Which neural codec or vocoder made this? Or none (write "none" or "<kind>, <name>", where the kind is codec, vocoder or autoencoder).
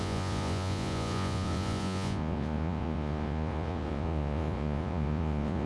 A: vocoder, Vocos